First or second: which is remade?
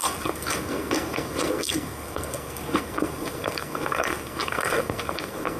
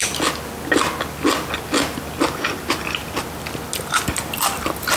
first